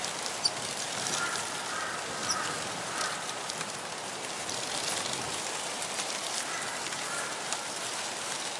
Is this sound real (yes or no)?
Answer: yes